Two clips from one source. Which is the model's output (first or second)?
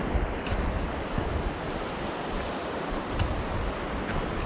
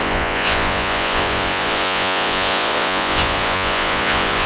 second